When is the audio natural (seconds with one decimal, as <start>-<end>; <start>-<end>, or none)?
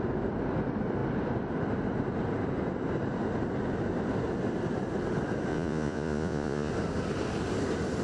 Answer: 0.0-5.5; 6.7-8.0